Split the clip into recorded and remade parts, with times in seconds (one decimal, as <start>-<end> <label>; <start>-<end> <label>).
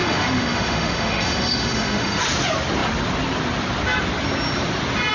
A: 0.0-2.2 remade; 2.2-5.1 recorded